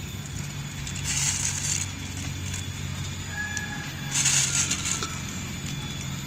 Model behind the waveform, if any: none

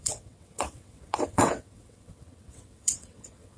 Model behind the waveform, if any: vocoder, WaveNeXt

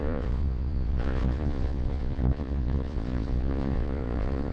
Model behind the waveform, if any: vocoder, Vocos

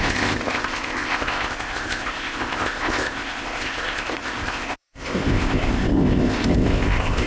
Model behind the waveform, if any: codec, ZipCodec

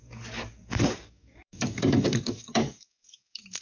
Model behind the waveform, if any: codec, DAC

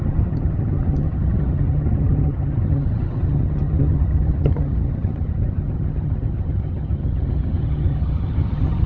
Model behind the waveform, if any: vocoder, HiFi-GAN